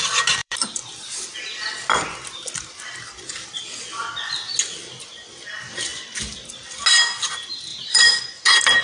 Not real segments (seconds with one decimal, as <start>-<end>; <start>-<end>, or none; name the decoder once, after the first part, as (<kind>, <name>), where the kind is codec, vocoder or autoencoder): 0.4-1.3 (vocoder, BigVGAN v2); 7.7-8.2